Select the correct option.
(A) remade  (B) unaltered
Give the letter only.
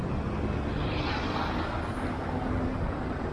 B